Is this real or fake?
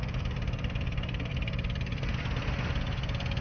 real